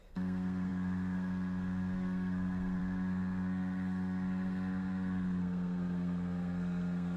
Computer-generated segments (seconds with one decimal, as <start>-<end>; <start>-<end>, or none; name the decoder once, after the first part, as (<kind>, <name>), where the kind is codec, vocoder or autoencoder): 0.0-7.2 (codec, SNAC)